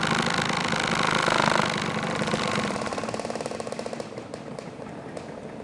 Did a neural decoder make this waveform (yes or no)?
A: no